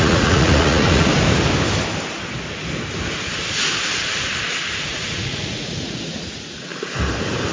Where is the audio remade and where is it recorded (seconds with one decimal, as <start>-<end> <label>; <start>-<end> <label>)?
0.0-1.1 remade; 1.1-4.7 recorded; 4.7-6.7 remade; 6.7-7.5 recorded